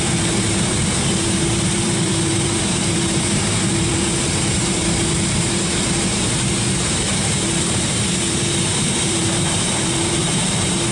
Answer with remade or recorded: remade